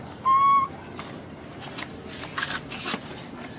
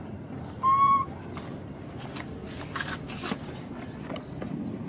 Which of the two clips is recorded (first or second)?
first